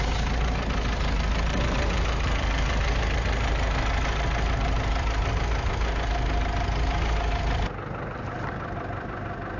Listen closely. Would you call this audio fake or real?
real